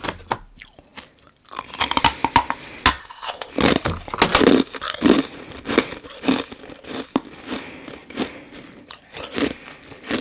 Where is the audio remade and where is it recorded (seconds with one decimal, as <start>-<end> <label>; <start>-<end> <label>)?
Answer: 0.0-3.0 recorded; 3.0-3.5 remade; 3.5-10.2 recorded